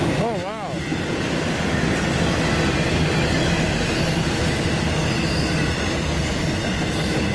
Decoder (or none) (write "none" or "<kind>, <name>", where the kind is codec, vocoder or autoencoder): none